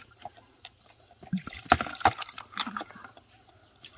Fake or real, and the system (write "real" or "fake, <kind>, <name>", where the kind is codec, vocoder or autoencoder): real